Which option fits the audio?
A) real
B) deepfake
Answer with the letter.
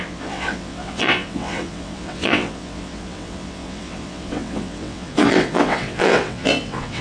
B